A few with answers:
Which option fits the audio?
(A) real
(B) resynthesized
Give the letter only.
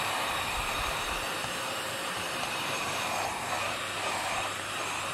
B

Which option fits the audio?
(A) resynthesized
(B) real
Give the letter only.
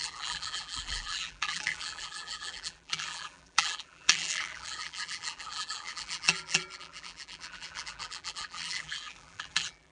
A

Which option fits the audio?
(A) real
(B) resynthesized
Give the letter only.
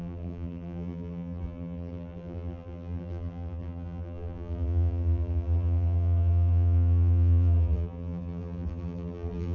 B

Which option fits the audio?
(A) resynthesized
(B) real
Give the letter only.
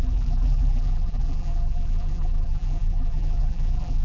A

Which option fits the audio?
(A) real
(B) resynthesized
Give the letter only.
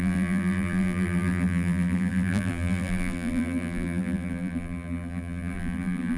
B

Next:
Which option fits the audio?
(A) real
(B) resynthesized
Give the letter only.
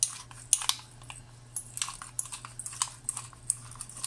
A